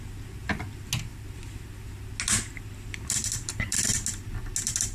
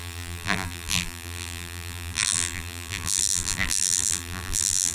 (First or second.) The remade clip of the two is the second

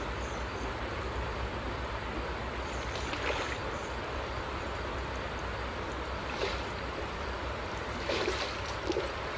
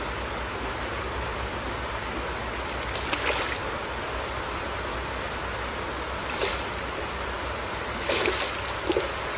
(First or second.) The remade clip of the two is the first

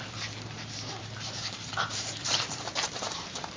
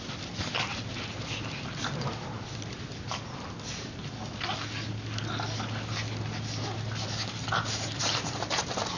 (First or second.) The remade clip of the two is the first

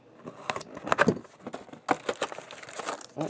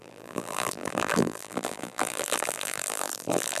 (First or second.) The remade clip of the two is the second